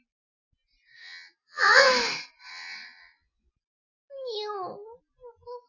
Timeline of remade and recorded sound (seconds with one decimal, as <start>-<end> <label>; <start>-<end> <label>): 0.0-1.0 recorded; 1.0-1.9 remade; 1.9-2.5 recorded; 2.5-3.5 remade; 3.5-5.7 recorded